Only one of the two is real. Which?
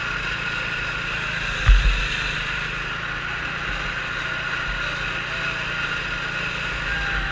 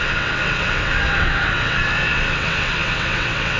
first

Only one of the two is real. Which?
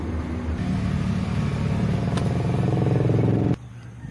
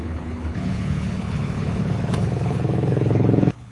first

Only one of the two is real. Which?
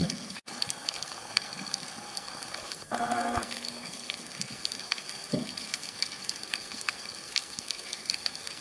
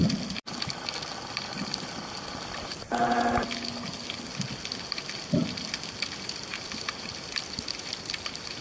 second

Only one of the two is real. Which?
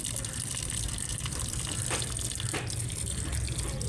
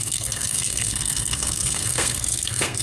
first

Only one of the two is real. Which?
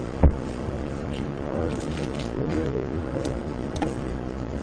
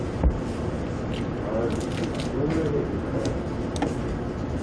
second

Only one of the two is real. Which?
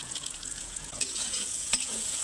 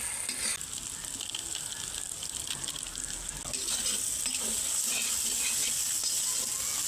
second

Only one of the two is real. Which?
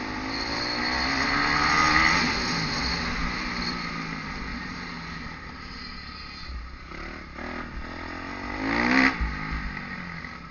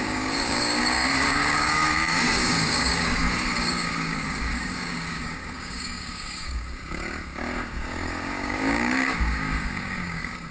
first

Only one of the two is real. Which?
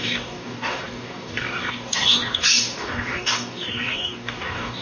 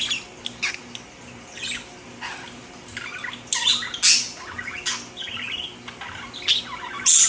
second